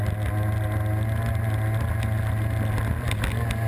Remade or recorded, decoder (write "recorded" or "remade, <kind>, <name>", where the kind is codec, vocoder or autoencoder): recorded